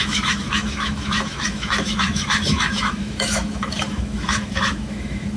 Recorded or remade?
remade